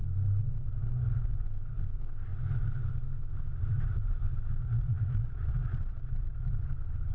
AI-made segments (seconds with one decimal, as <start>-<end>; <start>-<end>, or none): 4.6-6.5